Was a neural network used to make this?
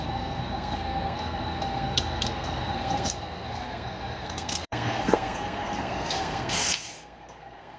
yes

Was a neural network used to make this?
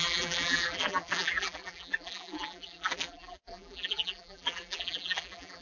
yes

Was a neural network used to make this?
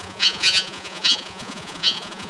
yes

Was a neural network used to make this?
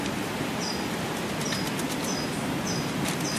no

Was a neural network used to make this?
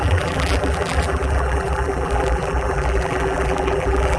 yes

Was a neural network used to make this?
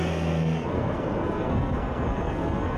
yes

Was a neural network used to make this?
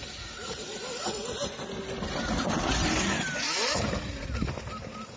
no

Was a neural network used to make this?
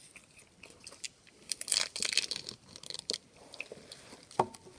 no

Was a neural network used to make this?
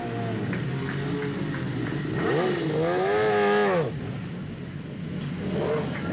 no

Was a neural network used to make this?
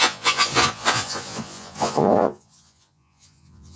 yes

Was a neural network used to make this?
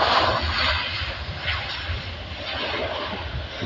no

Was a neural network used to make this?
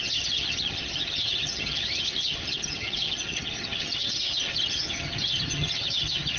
yes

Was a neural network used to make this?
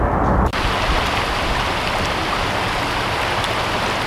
no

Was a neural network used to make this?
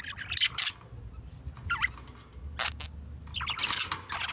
no